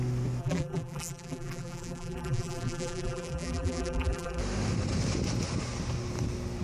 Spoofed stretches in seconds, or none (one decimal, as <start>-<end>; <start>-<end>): 0.4-4.4